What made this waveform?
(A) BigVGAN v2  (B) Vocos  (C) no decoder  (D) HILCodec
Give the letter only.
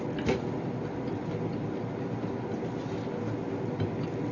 C